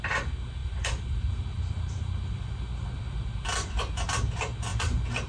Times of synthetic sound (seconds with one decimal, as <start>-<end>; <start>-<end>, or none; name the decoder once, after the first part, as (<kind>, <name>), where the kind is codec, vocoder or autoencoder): 0.6-3.8 (vocoder, BigVGAN v2)